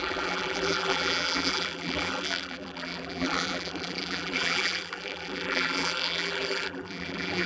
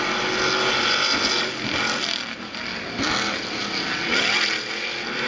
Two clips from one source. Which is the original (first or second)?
second